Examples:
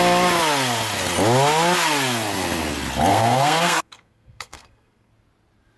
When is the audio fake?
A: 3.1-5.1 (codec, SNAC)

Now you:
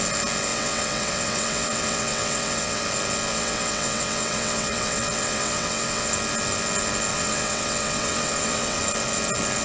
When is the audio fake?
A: 0.5-2.8 (vocoder, WaveNeXt); 3.3-6.1; 7.1-8.8

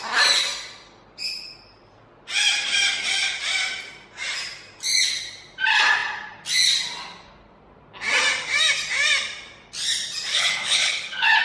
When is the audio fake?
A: 10.3-11.4 (codec, HILCodec)